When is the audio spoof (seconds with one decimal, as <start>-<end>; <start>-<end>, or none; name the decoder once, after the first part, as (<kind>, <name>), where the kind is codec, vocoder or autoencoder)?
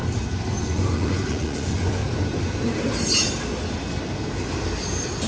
0.6-2.0 (vocoder, Vocos)